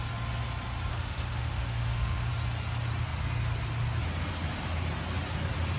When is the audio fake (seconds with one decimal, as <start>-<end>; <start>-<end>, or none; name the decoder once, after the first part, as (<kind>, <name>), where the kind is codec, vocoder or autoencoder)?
0.9-2.3 (autoencoder, DAC-VAE)